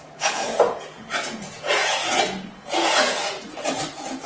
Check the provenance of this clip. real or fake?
fake